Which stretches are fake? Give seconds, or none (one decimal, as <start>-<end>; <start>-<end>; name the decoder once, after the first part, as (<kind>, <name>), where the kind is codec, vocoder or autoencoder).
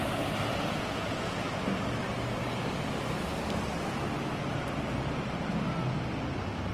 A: 0.5-1.3 (vocoder, Vocos)